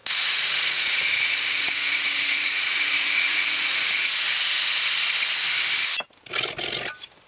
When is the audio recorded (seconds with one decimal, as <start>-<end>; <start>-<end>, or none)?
4.1-7.3